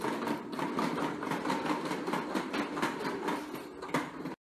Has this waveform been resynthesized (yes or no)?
no